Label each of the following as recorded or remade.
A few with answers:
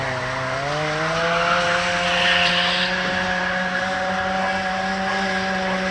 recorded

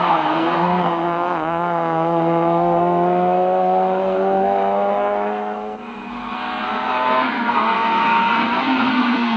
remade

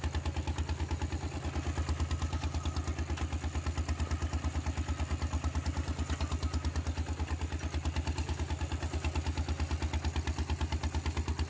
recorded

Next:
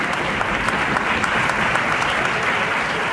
recorded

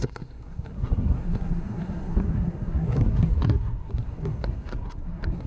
remade